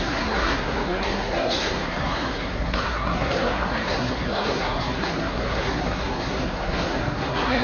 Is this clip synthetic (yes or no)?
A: yes